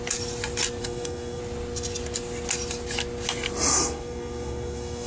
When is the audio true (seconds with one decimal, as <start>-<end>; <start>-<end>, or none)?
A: 0.0-0.8; 1.4-3.7